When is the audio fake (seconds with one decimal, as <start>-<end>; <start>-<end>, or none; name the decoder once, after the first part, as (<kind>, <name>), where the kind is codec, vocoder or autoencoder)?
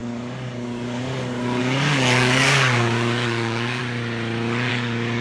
0.0-3.8 (codec, DAC); 4.7-5.2